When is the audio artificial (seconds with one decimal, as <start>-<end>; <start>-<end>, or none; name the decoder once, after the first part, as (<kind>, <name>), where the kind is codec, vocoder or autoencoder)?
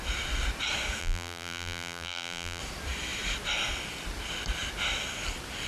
1.0-2.6 (vocoder, BigVGAN v2)